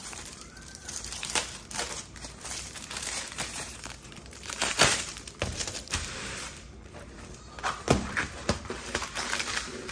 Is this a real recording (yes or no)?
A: no